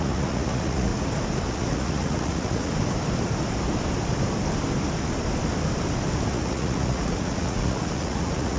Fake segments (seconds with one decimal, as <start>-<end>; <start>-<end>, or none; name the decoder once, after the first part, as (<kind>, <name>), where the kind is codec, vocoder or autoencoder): 0.0-0.9 (vocoder, Vocos); 1.5-2.7; 6.3-8.6